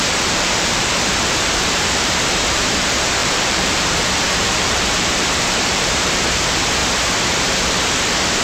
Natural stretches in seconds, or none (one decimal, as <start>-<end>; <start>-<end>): 6.8-7.3